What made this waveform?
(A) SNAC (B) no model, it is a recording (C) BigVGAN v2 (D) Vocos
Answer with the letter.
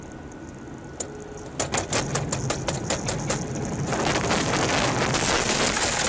B